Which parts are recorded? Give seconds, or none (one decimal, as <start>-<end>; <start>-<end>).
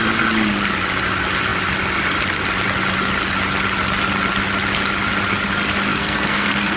0.0-5.9